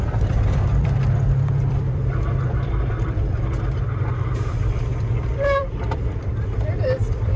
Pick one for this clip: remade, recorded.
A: remade